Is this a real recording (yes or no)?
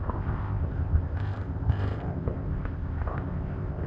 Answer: no